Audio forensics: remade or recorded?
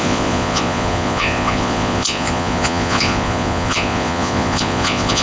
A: remade